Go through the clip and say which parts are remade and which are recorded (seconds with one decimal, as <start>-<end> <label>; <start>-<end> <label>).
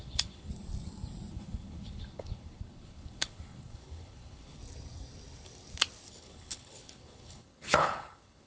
0.0-0.5 remade; 0.5-1.3 recorded; 1.3-4.6 remade; 4.6-6.1 recorded; 6.1-8.5 remade